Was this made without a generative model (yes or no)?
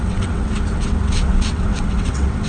no